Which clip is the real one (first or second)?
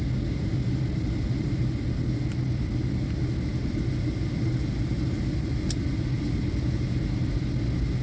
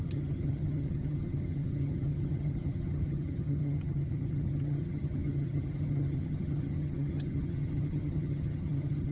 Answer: first